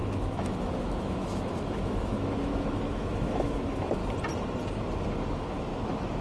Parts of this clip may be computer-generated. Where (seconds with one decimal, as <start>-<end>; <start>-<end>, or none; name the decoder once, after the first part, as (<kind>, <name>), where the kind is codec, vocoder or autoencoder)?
0.0-4.0 (autoencoder, DAC-VAE); 5.3-5.7